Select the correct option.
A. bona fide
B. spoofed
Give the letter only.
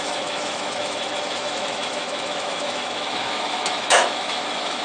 B